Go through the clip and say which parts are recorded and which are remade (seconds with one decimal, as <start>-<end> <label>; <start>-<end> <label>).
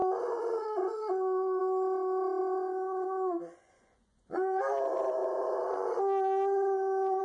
0.0-1.6 remade; 1.6-2.4 recorded; 2.4-4.6 remade; 4.6-5.2 recorded; 5.2-6.0 remade; 6.0-7.2 recorded